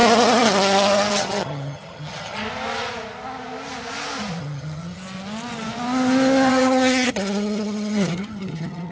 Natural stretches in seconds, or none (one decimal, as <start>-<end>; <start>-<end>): 0.0-1.1; 2.4-4.4; 5.0-6.5